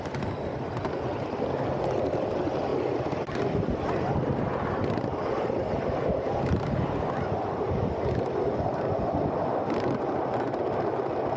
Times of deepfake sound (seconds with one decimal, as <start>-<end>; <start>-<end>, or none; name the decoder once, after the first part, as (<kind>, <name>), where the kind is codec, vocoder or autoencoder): none